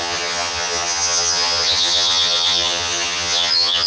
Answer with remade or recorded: remade